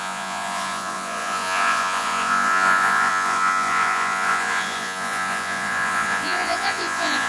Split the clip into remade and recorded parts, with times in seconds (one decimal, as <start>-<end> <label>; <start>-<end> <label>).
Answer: 0.0-7.3 remade